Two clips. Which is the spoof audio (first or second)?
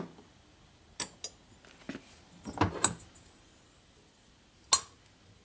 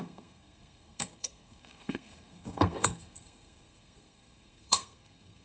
second